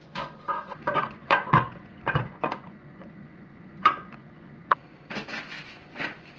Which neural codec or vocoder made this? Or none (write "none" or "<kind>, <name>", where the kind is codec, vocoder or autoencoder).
vocoder, Vocos